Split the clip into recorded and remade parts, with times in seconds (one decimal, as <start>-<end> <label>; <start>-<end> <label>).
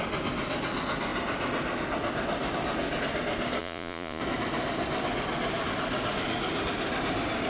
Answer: 0.0-3.6 recorded; 3.6-4.2 remade; 4.2-7.5 recorded